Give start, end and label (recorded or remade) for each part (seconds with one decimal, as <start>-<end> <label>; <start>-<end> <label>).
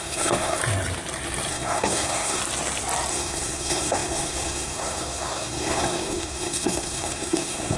0.0-0.6 remade; 0.6-1.5 recorded; 1.5-2.4 remade; 2.4-3.1 recorded; 3.1-7.8 remade